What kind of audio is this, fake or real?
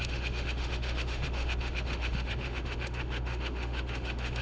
fake